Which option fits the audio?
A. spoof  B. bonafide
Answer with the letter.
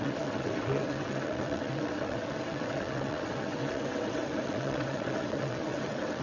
A